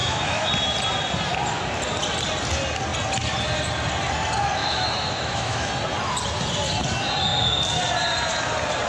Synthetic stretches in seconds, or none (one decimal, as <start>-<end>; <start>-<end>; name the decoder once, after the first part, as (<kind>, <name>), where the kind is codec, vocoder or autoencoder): 0.0-0.5 (autoencoder, DAC-VAE); 4.6-5.7